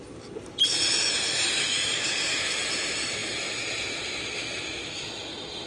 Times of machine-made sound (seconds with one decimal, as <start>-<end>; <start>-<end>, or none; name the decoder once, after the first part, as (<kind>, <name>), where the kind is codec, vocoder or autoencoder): 0.0-5.7 (vocoder, BigVGAN v2)